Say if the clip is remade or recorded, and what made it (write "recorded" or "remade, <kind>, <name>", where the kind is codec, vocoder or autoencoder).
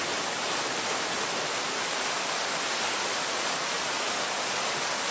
recorded